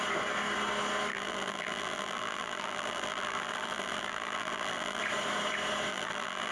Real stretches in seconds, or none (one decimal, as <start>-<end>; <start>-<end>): 0.0-1.1; 5.0-5.9